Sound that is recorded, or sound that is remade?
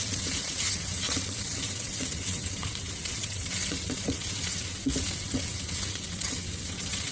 remade